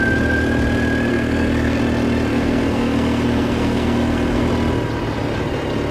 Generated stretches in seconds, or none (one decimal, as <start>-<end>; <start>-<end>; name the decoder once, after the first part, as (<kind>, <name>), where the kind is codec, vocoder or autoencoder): 1.1-1.8 (codec, SNAC); 2.3-4.5

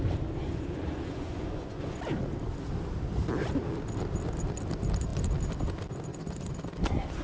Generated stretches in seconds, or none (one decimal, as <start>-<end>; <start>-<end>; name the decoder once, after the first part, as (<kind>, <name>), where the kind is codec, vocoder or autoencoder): 0.4-2.0 (vocoder, Vocos)

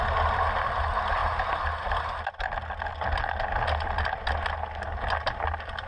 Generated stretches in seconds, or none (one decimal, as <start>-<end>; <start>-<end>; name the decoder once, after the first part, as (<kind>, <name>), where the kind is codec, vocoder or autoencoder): none

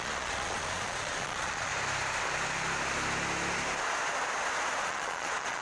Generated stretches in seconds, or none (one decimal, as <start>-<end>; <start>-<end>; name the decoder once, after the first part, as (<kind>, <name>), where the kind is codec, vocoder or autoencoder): 0.0-1.7 (vocoder, Vocos); 4.8-5.6

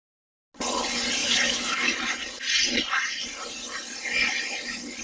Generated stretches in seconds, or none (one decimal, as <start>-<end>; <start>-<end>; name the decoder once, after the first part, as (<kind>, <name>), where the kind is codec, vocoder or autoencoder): 1.2-2.0 (autoencoder, DAC-VAE)

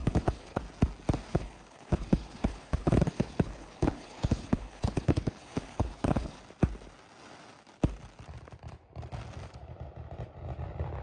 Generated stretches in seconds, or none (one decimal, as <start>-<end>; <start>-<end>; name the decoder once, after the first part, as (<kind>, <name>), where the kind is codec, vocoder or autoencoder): 0.0-0.6 (codec, HILCodec); 1.3-6.4

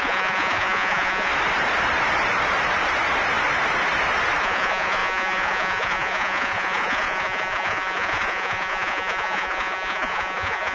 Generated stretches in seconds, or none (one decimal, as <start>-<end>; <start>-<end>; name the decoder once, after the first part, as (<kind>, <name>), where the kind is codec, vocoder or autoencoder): 0.0-1.3 (vocoder, Vocos); 4.4-10.7